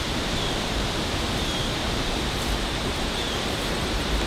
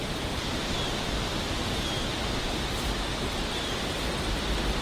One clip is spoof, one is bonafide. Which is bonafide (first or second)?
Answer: second